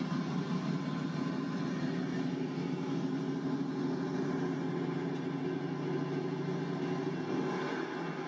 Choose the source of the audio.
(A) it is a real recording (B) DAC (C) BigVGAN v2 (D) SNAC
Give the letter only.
A